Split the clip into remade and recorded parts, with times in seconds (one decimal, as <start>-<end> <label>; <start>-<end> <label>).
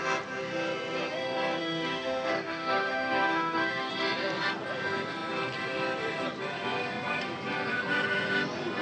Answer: 0.0-1.6 recorded; 1.6-3.9 remade; 3.9-8.8 recorded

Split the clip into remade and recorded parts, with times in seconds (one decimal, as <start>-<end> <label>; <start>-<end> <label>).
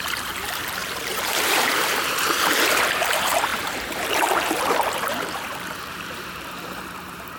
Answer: 0.0-7.4 remade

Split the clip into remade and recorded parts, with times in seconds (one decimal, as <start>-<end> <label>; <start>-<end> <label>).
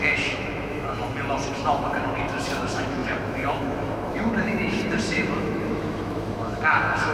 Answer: 0.0-1.0 remade; 1.0-1.5 recorded; 1.5-7.1 remade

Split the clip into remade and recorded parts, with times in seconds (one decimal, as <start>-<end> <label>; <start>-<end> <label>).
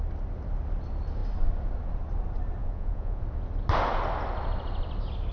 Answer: 0.0-2.6 recorded; 2.6-3.2 remade; 3.2-5.3 recorded